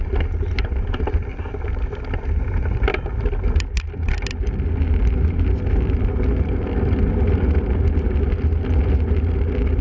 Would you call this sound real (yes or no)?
yes